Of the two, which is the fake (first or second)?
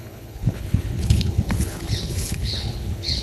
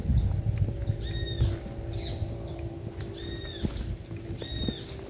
first